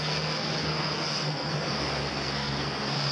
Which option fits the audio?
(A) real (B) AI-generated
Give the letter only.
B